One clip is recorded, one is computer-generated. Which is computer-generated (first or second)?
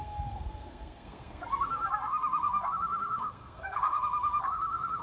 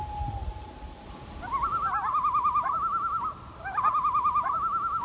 first